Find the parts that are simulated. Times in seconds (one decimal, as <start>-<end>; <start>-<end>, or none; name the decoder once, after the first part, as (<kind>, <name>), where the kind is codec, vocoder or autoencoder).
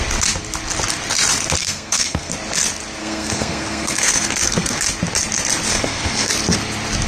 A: 1.6-2.3 (codec, SNAC); 3.0-4.8; 5.7-6.3